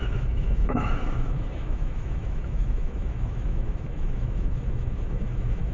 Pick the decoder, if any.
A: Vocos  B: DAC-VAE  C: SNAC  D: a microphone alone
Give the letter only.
B